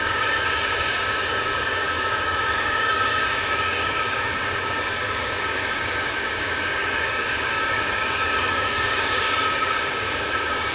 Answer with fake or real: fake